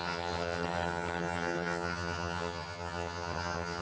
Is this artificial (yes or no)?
yes